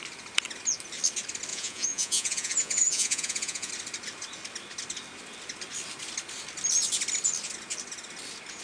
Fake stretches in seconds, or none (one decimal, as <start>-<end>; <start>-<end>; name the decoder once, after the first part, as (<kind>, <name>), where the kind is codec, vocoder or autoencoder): 1.5-3.7 (vocoder, Vocos)